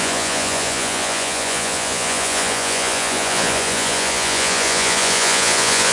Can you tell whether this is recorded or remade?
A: remade